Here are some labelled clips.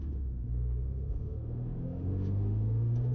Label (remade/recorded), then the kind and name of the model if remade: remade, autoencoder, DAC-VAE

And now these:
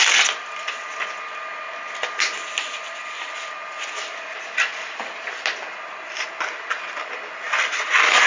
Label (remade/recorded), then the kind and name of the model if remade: recorded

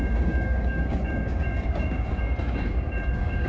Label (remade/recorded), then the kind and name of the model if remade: remade, codec, DAC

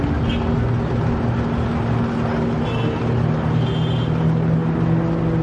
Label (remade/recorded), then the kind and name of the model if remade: recorded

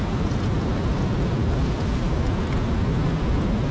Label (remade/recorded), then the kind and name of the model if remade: remade, vocoder, BigVGAN v2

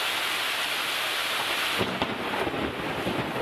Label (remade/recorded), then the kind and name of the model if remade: recorded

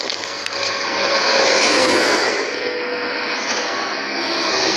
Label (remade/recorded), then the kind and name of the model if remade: remade, codec, SNAC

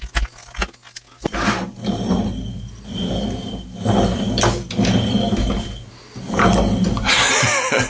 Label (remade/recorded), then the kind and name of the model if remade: recorded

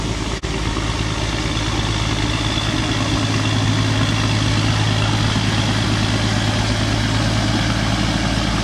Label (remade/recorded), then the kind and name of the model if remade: recorded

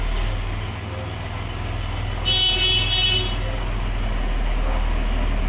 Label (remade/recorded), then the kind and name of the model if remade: recorded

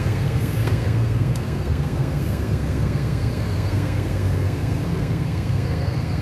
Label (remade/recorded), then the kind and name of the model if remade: remade, codec, SNAC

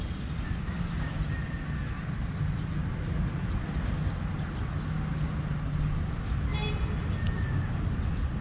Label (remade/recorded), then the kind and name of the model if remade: recorded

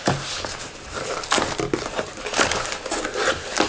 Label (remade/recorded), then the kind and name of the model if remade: recorded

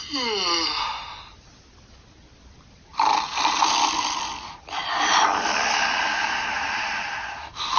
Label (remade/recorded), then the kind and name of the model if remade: recorded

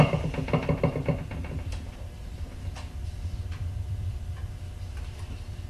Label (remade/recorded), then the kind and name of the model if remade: remade, vocoder, BigVGAN v2